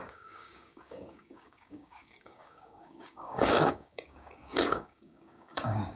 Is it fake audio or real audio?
fake